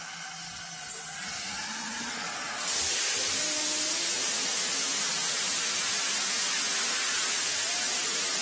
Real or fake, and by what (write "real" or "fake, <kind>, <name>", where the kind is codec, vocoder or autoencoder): real